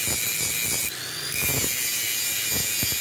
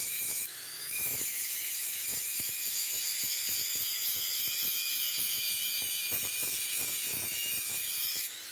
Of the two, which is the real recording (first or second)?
first